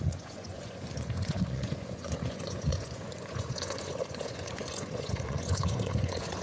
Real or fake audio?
fake